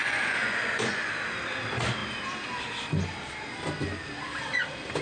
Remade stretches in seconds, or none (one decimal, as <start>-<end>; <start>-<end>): 0.0-1.1